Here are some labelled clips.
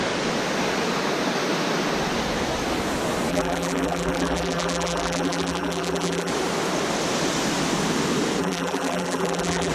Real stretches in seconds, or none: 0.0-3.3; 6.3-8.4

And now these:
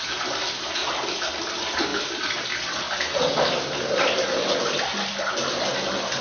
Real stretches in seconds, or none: 0.0-0.8; 1.3-6.2

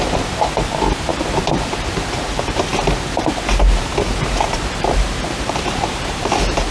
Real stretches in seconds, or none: none